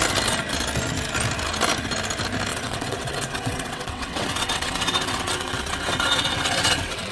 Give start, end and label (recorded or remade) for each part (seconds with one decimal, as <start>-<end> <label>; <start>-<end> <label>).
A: 0.0-2.5 recorded; 2.5-7.1 remade